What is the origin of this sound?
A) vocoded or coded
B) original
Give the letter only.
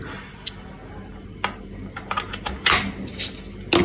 B